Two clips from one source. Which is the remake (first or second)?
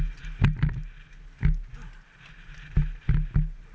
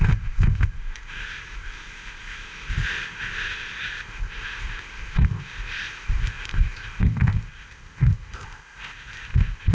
second